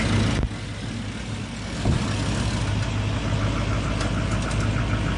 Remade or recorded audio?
recorded